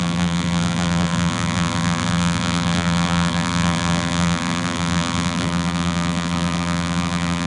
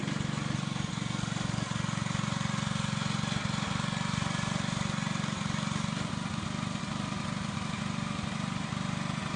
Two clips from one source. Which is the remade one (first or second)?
first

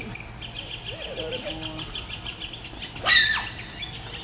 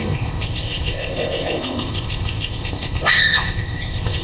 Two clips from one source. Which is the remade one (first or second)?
second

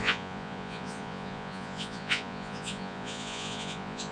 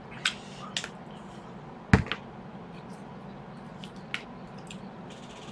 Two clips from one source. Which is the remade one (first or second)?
first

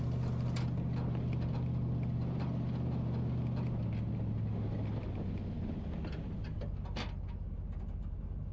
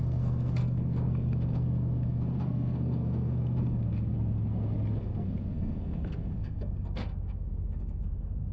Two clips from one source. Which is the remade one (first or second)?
second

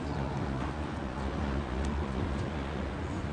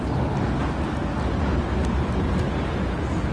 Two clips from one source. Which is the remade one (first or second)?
first